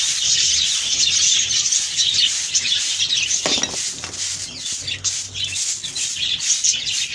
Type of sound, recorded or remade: recorded